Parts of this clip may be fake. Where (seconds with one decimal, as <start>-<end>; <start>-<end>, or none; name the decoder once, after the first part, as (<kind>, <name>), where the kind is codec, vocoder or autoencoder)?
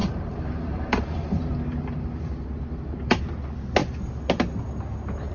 0.0-3.2 (vocoder, BigVGAN v2)